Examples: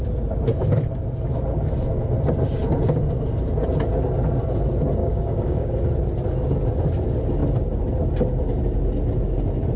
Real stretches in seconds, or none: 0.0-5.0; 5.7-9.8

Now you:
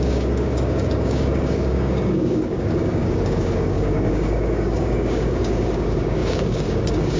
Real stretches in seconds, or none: none

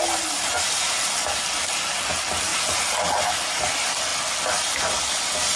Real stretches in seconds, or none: 0.0-5.6

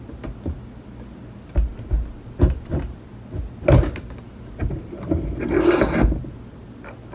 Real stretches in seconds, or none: 0.0-7.1

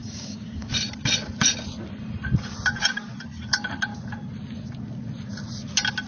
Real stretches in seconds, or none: 0.7-6.1

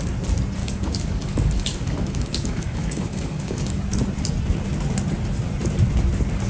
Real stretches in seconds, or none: 0.0-0.6; 3.8-6.5